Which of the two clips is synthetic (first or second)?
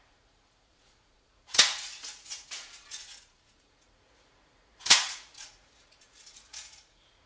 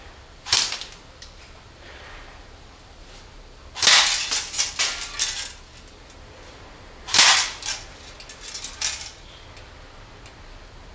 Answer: first